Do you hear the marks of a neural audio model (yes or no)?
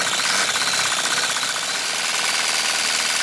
no